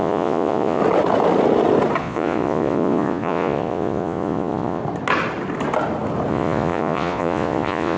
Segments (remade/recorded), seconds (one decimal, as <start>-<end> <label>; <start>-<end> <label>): 0.0-0.8 remade; 0.8-2.0 recorded; 2.0-4.8 remade; 4.8-6.3 recorded; 6.3-8.0 remade

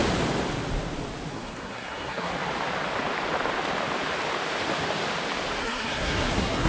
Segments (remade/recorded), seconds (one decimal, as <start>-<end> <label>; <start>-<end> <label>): 0.0-1.3 recorded; 1.3-2.3 remade; 2.3-5.6 recorded; 5.6-6.7 remade